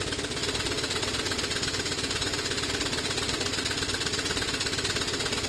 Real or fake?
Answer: real